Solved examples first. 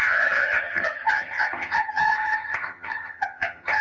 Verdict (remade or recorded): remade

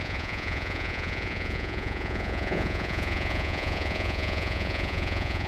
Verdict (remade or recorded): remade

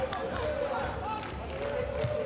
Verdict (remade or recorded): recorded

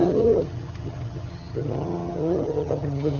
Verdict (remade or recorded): remade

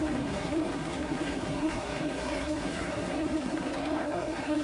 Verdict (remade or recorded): remade